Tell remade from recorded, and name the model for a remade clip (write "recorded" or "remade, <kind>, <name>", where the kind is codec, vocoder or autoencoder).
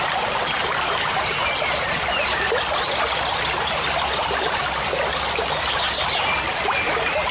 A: recorded